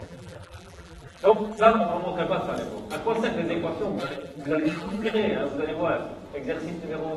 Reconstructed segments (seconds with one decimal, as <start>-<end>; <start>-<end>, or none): 0.0-1.9; 4.0-5.2